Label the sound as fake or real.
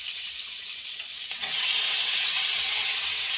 fake